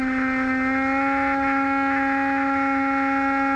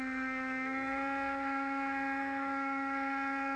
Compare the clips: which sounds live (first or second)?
first